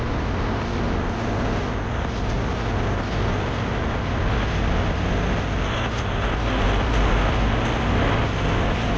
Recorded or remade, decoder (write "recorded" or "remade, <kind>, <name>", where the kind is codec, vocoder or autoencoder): recorded